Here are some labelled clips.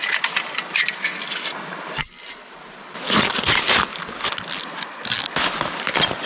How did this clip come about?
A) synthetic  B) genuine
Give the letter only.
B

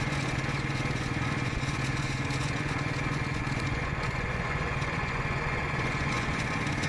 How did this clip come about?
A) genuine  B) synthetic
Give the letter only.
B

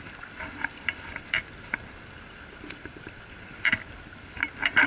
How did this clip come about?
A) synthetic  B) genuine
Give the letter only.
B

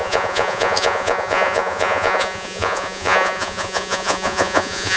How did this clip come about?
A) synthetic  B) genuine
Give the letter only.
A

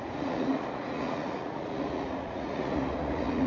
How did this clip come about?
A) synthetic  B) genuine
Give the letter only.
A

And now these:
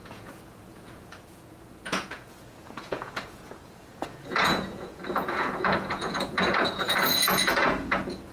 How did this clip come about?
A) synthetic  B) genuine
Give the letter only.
A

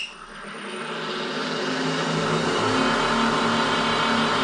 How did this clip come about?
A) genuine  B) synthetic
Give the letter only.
A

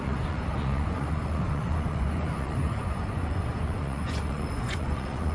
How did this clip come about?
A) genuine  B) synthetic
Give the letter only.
B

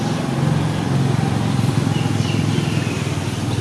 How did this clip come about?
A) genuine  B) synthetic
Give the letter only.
A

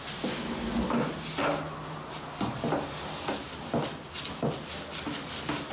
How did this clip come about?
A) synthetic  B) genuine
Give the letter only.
B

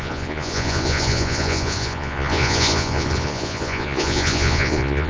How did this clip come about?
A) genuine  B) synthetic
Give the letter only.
B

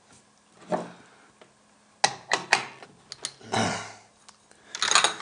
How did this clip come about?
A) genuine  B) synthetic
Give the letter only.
A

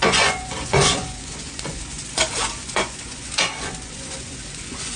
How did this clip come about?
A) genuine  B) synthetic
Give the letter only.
B